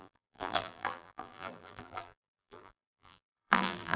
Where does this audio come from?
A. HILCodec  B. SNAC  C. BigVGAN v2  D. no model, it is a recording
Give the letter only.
C